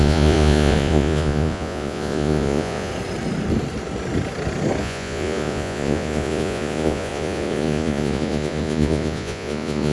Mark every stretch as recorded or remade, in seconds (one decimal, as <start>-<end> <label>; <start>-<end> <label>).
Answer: 0.0-2.9 remade; 2.9-4.8 recorded; 4.8-9.9 remade